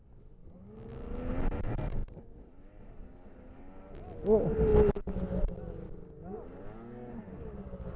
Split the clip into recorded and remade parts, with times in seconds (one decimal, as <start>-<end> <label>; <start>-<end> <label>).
0.0-8.0 recorded